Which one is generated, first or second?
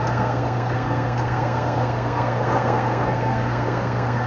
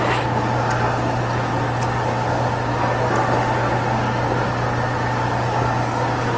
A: first